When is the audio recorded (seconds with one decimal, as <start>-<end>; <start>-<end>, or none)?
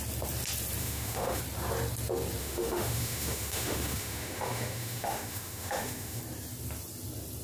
0.0-0.8; 1.4-2.4; 6.2-7.4